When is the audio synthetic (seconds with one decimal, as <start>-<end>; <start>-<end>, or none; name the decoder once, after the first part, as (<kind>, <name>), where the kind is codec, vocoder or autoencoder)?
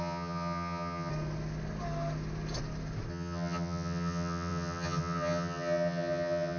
0.0-1.1 (vocoder, HiFi-GAN); 3.1-6.6